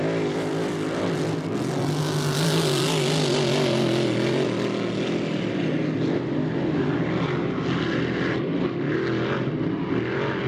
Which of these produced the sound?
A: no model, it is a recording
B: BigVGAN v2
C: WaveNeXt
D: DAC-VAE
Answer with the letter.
A